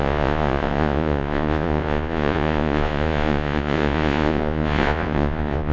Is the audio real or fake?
fake